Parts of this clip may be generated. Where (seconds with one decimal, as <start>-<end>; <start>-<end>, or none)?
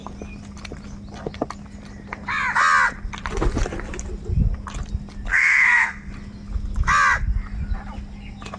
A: 5.3-6.1